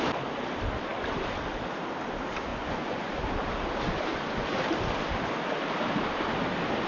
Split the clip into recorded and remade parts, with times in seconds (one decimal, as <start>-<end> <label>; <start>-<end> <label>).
0.0-2.5 recorded; 2.5-3.1 remade; 3.1-6.9 recorded